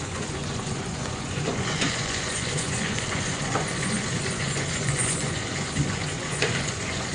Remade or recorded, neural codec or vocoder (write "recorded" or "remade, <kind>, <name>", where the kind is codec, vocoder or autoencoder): remade, vocoder, Vocos